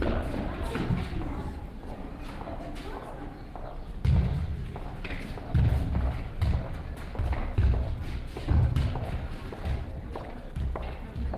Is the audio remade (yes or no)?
no